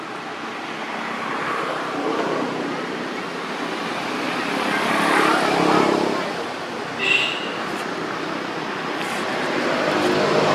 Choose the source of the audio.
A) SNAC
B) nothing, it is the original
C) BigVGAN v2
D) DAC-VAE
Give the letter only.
B